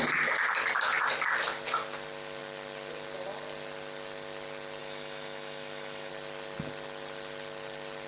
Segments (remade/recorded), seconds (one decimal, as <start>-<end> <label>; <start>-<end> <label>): 0.0-4.8 recorded; 4.8-6.1 remade; 6.1-8.1 recorded